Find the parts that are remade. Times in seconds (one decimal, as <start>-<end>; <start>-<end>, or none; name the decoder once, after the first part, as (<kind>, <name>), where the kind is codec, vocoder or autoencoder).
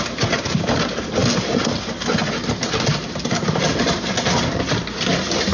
none